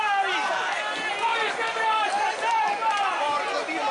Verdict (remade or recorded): recorded